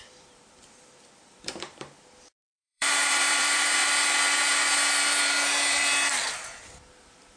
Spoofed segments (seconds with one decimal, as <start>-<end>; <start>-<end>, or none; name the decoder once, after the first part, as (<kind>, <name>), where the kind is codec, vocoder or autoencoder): 0.0-3.8 (vocoder, BigVGAN v2); 7.0-7.4